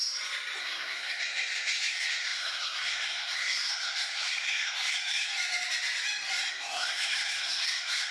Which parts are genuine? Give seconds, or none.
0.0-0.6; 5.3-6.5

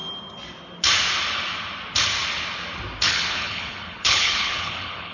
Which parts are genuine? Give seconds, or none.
0.0-3.1

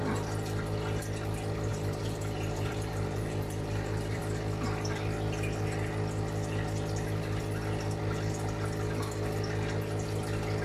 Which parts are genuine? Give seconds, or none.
0.0-1.7; 4.2-10.6